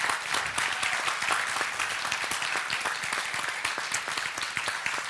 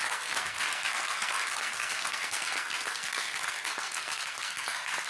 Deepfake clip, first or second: second